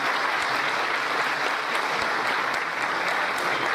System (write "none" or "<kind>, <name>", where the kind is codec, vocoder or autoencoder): none